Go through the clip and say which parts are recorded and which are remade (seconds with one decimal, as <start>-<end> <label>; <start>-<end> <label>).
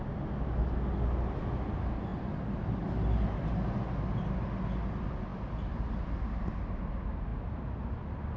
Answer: 0.0-8.4 recorded